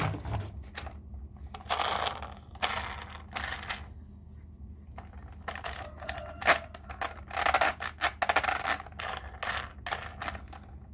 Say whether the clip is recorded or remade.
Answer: recorded